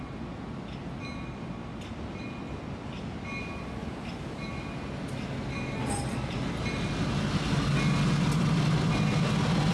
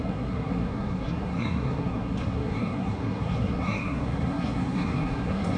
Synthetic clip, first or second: second